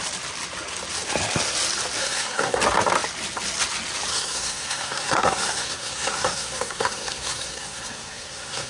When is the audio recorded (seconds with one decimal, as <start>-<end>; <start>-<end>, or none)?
0.0-2.0; 2.6-4.1